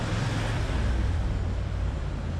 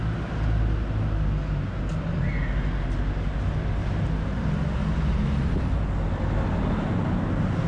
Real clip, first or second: second